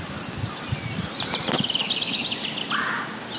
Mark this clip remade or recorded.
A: recorded